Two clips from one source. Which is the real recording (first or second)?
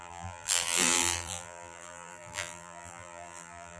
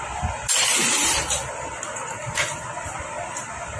second